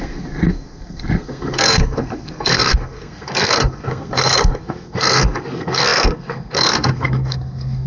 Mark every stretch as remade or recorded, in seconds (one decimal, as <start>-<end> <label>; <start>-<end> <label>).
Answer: 0.0-7.9 remade